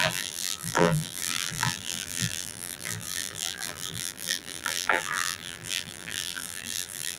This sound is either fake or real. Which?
fake